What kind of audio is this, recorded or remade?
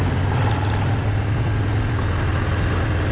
remade